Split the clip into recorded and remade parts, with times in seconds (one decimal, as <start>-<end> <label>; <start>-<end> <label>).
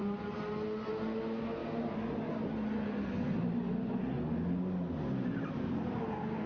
0.0-6.5 recorded